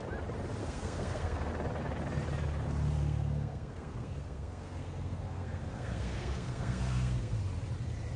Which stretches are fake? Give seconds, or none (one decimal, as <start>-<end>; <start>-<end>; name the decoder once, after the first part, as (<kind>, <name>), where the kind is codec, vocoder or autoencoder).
0.6-1.5 (codec, SNAC); 3.0-7.4